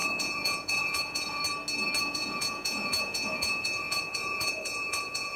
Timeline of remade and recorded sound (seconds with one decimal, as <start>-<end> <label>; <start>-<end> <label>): 0.0-1.4 remade; 1.4-2.0 recorded; 2.0-5.4 remade